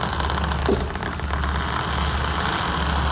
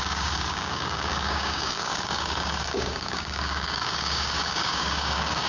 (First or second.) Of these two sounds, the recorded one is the first